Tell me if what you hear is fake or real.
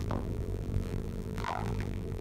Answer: fake